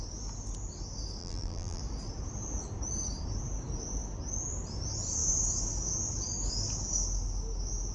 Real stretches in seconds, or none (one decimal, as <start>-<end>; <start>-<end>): 0.0-1.2; 1.8-7.9